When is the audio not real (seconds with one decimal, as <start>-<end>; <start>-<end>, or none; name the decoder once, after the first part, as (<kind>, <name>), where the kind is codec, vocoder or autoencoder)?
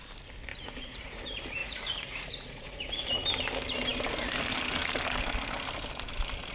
0.5-1.2 (vocoder, Vocos); 1.6-2.8